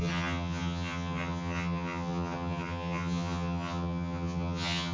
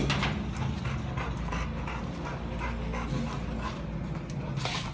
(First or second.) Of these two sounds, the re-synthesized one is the first